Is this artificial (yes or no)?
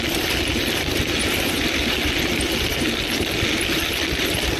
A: no